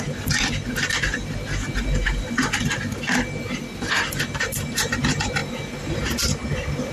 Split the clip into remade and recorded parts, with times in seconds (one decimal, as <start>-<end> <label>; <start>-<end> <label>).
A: 0.0-6.9 recorded